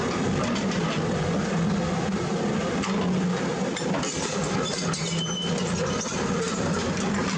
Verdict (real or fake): fake